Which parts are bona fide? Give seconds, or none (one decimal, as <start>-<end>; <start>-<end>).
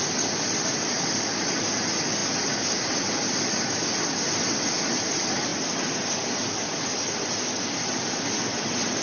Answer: 0.0-9.0